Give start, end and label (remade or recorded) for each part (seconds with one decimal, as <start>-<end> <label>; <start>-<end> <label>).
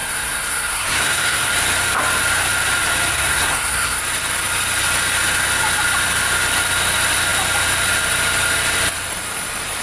0.0-1.5 remade; 1.5-3.1 recorded; 3.1-4.0 remade; 4.0-9.8 recorded